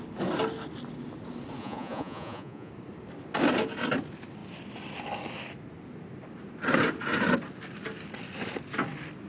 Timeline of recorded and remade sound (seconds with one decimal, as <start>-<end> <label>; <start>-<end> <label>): 0.0-1.6 recorded; 1.6-2.7 remade; 2.7-9.3 recorded

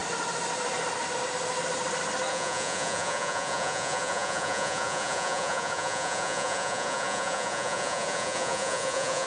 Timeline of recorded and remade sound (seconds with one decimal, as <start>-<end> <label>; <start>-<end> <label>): 0.0-2.3 recorded; 2.3-9.3 remade

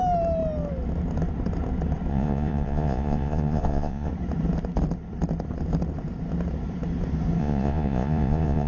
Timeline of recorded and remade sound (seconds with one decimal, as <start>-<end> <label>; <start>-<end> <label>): 0.0-2.1 recorded; 2.1-4.1 remade; 4.1-7.4 recorded; 7.4-8.7 remade

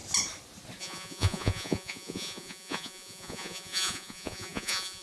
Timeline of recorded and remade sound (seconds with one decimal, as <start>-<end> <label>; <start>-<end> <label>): 0.0-0.8 recorded; 0.8-5.0 remade

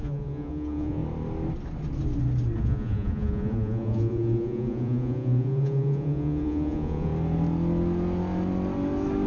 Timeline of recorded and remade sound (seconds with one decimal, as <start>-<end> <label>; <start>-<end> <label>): 0.0-1.0 remade; 1.0-2.6 recorded; 2.6-7.1 remade; 7.1-9.3 recorded

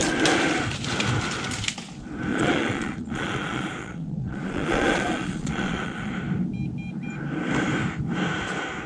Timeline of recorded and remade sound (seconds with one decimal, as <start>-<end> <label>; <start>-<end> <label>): 0.0-2.3 recorded; 2.3-6.1 remade; 6.1-8.9 recorded

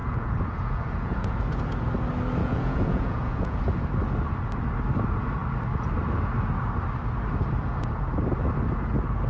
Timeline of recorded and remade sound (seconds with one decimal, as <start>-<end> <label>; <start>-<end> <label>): 0.0-1.4 remade; 1.4-2.4 recorded; 2.4-3.6 remade; 3.6-9.3 recorded